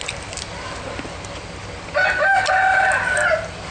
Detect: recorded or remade recorded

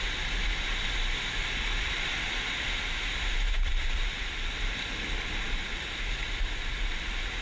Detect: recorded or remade recorded